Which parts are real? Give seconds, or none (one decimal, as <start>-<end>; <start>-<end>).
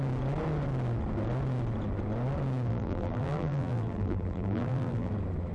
0.0-2.7; 5.1-5.5